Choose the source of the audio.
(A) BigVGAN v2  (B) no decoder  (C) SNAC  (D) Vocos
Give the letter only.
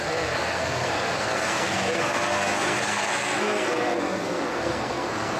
C